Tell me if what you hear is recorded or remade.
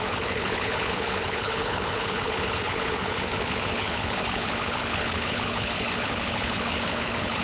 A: remade